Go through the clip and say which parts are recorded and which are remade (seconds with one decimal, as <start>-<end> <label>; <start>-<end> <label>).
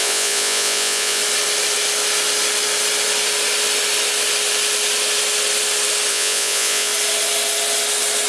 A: 0.0-1.2 remade; 1.2-6.1 recorded; 6.1-6.9 remade; 6.9-8.3 recorded